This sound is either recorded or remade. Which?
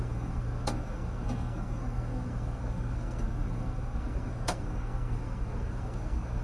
remade